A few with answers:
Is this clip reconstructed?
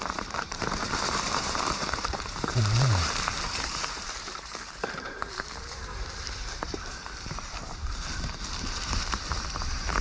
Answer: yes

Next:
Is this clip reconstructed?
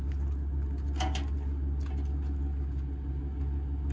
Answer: no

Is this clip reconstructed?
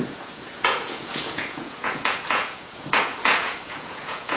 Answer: yes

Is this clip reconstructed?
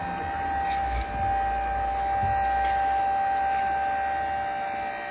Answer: no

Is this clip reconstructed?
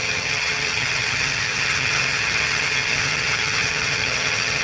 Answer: yes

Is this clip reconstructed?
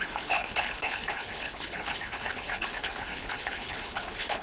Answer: yes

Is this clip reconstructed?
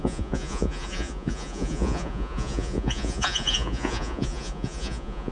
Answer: yes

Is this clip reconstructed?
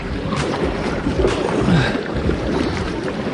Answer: yes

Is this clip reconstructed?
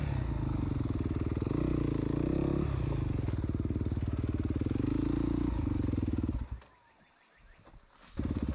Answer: no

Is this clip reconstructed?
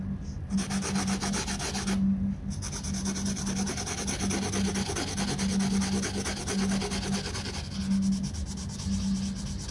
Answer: no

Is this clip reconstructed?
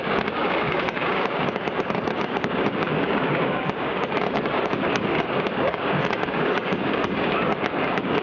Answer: yes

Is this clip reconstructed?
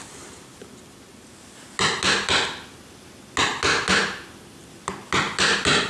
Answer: no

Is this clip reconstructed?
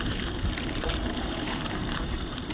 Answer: yes